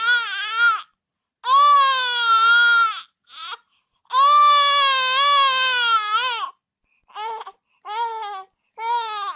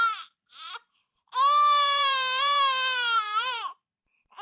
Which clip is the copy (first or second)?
second